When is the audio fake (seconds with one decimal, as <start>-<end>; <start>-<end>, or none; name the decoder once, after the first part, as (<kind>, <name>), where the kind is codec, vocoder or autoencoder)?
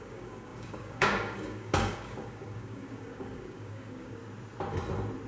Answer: 0.0-4.2 (codec, DAC)